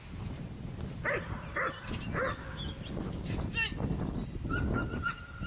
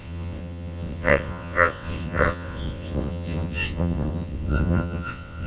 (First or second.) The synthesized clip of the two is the second